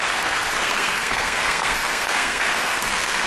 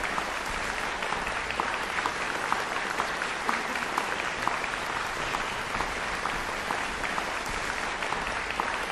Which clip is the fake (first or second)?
first